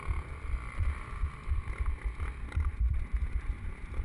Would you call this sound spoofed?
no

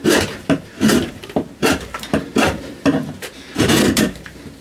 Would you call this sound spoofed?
yes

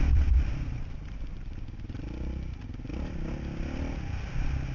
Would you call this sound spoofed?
no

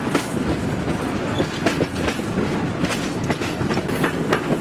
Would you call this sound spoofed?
no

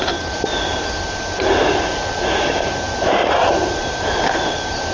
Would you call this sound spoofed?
yes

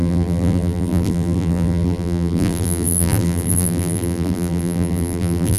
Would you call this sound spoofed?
yes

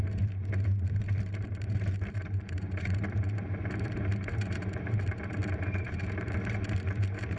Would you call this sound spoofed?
yes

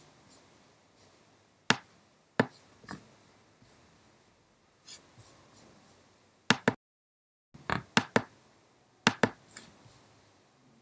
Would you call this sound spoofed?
no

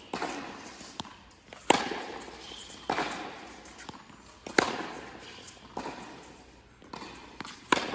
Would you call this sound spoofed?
no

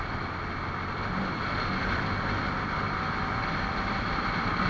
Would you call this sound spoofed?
no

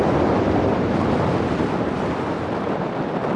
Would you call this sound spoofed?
no